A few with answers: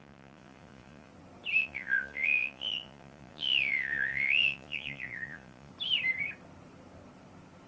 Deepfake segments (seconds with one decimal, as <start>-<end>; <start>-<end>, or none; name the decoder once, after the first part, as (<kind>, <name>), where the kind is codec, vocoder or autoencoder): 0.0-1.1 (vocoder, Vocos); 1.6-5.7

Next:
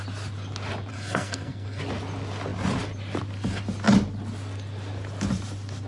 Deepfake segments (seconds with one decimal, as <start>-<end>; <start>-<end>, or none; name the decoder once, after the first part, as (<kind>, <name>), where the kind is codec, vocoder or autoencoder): 0.9-1.8 (codec, SNAC)

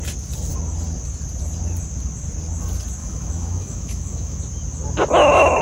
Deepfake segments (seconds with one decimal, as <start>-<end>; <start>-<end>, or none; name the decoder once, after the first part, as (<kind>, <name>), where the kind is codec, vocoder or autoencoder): 3.0-4.4 (autoencoder, DAC-VAE)

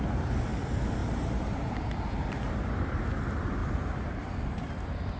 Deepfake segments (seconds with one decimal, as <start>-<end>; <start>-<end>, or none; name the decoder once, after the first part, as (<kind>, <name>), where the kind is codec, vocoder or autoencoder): 1.0-3.0 (vocoder, BigVGAN v2); 3.6-4.4

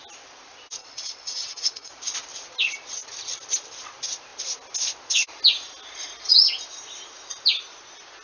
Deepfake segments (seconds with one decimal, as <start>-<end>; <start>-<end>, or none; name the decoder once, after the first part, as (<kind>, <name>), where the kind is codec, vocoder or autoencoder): 0.8-1.9 (vocoder, WaveNeXt)

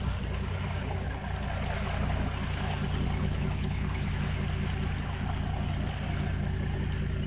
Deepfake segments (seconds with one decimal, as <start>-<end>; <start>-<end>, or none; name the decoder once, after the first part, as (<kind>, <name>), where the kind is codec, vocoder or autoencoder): 3.2-4.1 (codec, HILCodec)

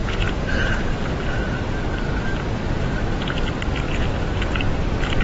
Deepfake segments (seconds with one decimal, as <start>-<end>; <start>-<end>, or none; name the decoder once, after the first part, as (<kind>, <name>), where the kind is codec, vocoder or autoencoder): 0.0-0.8 (vocoder, Vocos)